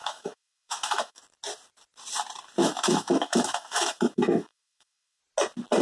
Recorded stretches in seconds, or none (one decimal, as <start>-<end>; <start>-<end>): 1.2-2.6; 5.2-5.8